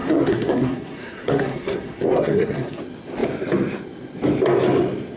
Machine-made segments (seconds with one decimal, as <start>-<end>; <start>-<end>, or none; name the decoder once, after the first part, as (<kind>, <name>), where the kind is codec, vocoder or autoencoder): 0.0-2.8 (codec, SNAC)

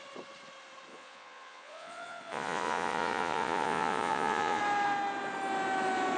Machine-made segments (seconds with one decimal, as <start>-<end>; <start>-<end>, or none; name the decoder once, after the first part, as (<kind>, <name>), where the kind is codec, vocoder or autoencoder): 0.9-4.6 (vocoder, Vocos)

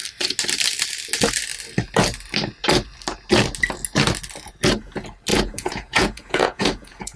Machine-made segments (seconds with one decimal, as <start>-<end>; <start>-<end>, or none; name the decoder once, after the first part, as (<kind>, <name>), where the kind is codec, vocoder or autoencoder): 5.3-7.2 (vocoder, Vocos)